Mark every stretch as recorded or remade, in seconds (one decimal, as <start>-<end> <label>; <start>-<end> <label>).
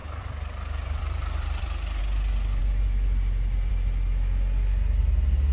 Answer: 0.0-2.0 remade; 2.0-2.6 recorded; 2.6-3.7 remade; 3.7-5.5 recorded